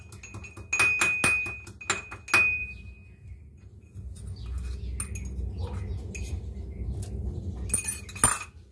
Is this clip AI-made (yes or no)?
no